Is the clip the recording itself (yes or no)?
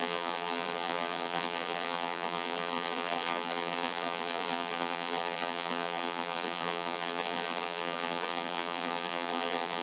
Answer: no